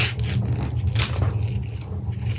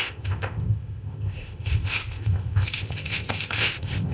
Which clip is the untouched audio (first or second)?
first